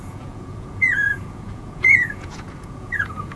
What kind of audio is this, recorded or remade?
remade